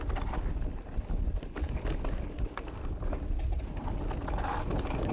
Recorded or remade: recorded